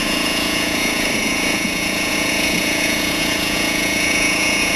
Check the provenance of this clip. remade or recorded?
remade